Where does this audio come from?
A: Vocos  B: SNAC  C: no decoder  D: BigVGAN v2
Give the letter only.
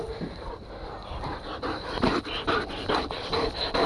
C